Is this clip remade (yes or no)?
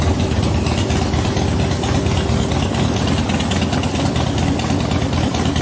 no